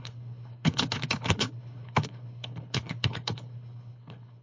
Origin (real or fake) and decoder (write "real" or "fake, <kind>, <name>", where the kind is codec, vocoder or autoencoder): fake, codec, HILCodec